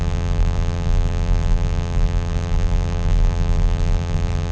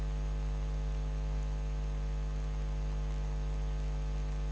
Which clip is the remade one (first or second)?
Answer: first